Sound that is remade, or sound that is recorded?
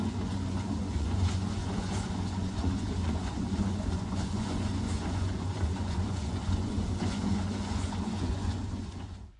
remade